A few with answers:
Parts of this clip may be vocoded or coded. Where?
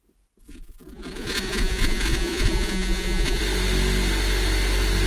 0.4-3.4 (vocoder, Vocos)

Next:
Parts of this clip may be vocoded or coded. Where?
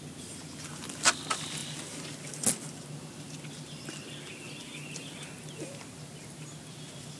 none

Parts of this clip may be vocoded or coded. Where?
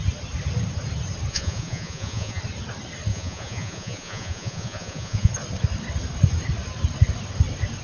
1.3-2.4 (vocoder, Vocos); 3.1-5.3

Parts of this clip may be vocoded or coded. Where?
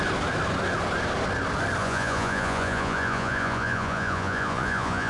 1.8-5.1 (vocoder, Vocos)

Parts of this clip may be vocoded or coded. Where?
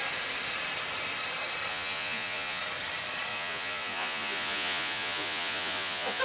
1.7-2.6 (vocoder, Vocos); 3.3-6.2